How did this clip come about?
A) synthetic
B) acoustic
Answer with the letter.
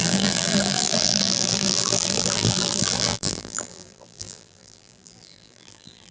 A